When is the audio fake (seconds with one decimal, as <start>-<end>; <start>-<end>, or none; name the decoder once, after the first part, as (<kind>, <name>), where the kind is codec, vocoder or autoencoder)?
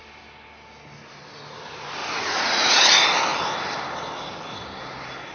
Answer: 2.0-2.8 (vocoder, Vocos)